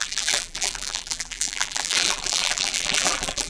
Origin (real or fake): fake